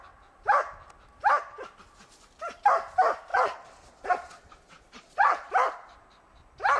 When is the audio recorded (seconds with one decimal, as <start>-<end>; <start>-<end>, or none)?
0.0-3.3; 5.5-6.8